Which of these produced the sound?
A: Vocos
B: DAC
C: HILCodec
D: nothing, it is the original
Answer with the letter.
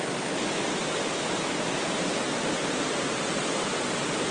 D